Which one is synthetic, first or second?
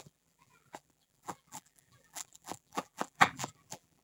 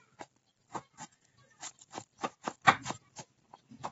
first